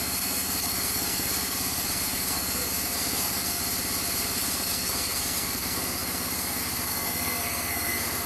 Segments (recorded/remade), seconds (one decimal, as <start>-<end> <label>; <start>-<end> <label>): 0.0-3.6 remade; 3.6-4.2 recorded; 4.2-8.3 remade